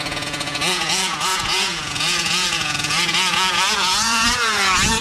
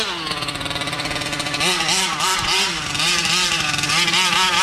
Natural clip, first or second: second